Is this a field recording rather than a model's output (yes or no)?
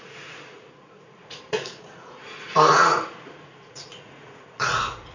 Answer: no